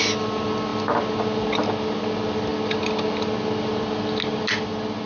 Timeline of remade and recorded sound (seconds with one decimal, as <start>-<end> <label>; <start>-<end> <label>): 0.0-5.1 recorded